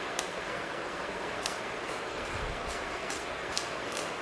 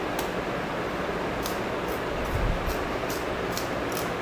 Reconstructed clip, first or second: first